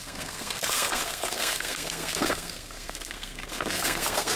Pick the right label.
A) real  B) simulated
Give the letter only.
B